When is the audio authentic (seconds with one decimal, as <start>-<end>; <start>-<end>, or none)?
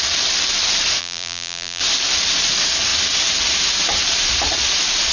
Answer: 0.0-1.0; 1.8-5.1